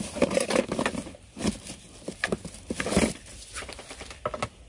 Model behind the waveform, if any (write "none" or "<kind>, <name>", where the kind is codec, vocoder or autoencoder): none